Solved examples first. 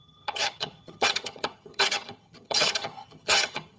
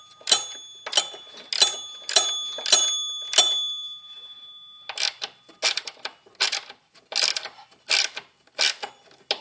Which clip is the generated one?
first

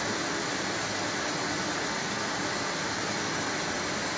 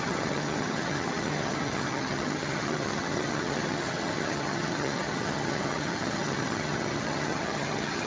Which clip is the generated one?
second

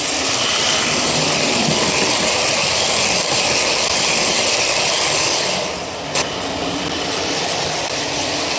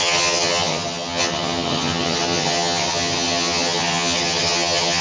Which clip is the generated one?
second